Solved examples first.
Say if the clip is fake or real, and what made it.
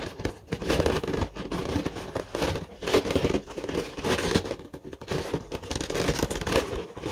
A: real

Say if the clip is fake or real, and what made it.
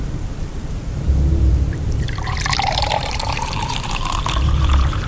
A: fake, vocoder, BigVGAN v2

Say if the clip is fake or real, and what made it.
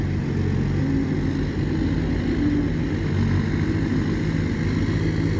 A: real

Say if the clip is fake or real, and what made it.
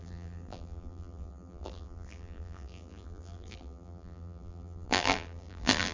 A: fake, vocoder, BigVGAN v2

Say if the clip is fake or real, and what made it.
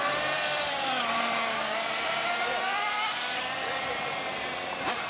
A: fake, vocoder, BigVGAN v2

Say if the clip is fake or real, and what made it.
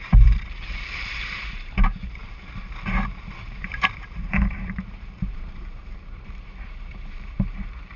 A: fake, vocoder, BigVGAN v2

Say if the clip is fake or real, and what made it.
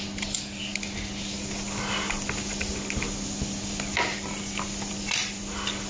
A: real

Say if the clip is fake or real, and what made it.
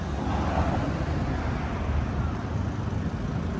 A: real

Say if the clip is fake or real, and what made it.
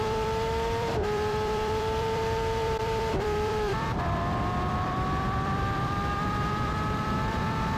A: fake, vocoder, BigVGAN v2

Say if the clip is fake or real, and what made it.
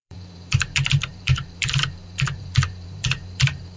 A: fake, vocoder, BigVGAN v2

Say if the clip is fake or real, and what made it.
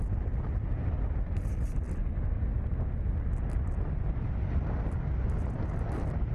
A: real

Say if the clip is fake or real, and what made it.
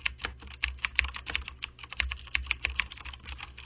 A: real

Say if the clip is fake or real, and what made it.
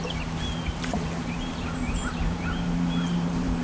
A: fake, vocoder, BigVGAN v2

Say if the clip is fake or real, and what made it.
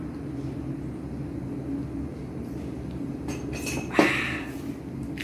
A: real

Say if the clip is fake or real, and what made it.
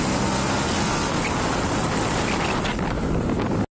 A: real